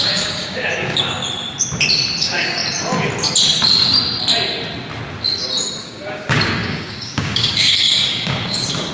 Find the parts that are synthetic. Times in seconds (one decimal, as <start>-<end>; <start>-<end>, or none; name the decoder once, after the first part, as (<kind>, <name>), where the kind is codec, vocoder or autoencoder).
0.0-1.2 (codec, DAC); 2.2-2.6; 5.8-8.9